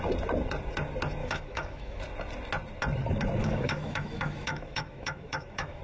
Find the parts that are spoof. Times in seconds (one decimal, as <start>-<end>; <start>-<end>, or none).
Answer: 1.2-2.0; 3.4-5.8